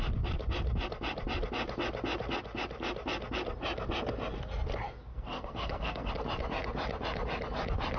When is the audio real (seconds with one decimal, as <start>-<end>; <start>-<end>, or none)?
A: 0.0-5.1; 6.1-8.0